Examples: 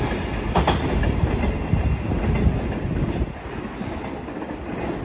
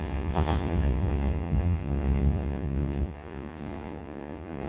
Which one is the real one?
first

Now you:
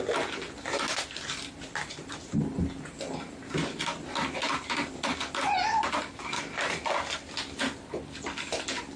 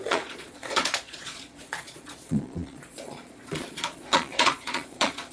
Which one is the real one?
first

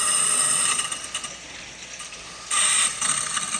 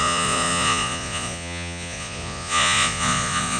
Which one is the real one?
first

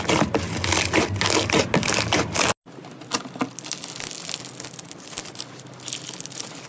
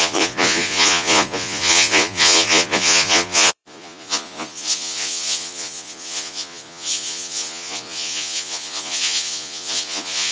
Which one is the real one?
first